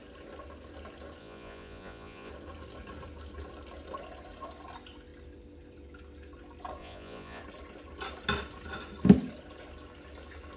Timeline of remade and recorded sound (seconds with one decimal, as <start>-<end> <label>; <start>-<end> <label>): 0.0-1.2 recorded; 1.2-2.3 remade; 2.3-6.8 recorded; 6.8-7.4 remade; 7.4-10.6 recorded